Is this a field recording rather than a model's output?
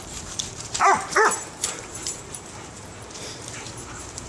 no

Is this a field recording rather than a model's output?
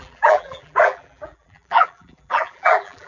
no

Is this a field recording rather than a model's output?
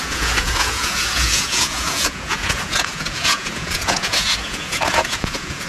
no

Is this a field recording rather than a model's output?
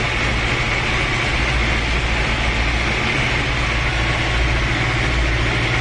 yes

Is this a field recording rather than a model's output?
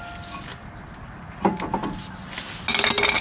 yes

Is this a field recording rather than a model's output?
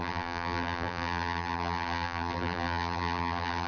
no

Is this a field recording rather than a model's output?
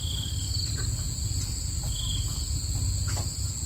yes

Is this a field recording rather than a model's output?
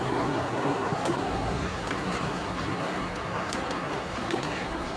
no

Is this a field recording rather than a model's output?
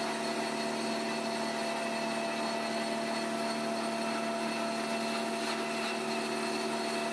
yes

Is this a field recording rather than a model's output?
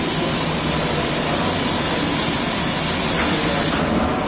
yes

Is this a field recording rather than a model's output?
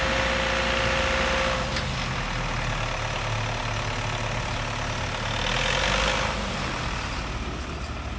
yes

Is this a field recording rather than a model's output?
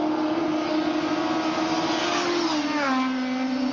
yes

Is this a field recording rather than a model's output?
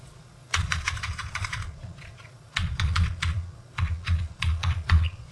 no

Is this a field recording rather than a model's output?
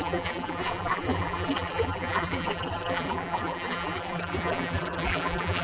no